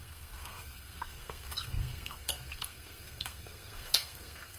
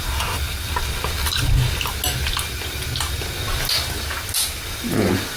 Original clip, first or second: second